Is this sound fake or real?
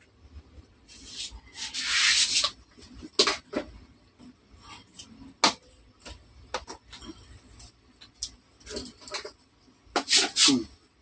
real